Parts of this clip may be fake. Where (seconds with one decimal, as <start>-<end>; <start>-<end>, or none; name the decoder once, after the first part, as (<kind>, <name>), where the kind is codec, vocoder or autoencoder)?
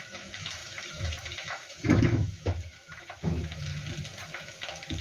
0.0-3.7 (autoencoder, DAC-VAE); 4.4-5.0